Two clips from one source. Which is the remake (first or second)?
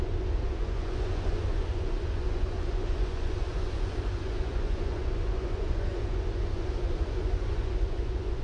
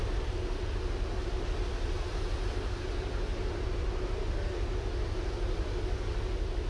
first